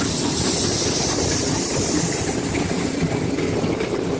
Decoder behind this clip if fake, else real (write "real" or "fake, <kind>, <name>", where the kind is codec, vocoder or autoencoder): real